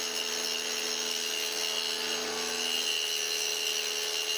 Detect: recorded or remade recorded